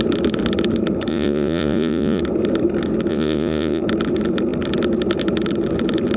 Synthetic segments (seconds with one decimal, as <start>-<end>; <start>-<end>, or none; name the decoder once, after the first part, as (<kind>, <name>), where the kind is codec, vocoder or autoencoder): 1.1-2.2 (vocoder, Vocos); 3.1-3.8